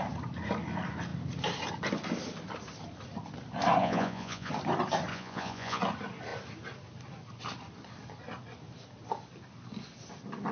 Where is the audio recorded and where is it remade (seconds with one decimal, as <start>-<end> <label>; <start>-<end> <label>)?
0.0-3.8 recorded; 3.8-4.5 remade; 4.5-5.1 recorded; 5.1-5.8 remade; 5.8-10.5 recorded